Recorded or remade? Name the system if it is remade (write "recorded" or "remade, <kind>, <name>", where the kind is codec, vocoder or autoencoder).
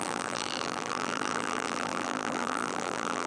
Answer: remade, vocoder, BigVGAN v2